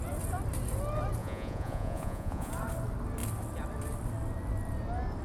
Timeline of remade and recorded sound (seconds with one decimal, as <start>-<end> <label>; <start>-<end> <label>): 0.0-1.2 recorded; 1.2-2.5 remade; 2.5-5.2 recorded